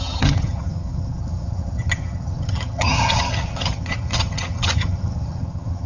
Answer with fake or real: fake